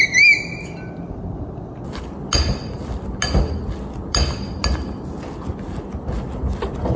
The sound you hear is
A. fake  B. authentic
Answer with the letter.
B